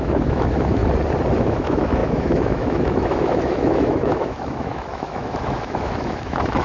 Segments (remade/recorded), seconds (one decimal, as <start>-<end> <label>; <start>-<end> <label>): 0.0-0.8 remade; 0.8-1.3 recorded; 1.3-6.6 remade